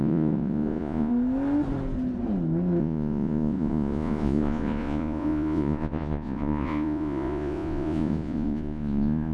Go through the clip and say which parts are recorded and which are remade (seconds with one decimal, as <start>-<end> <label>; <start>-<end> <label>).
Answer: 0.0-1.1 remade; 1.1-2.8 recorded; 2.8-9.3 remade